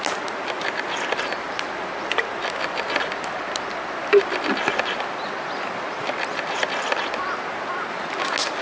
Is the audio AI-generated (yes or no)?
no